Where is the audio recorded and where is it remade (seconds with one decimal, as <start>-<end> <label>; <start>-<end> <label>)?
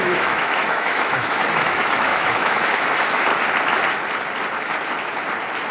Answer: 0.0-3.3 remade; 3.3-5.7 recorded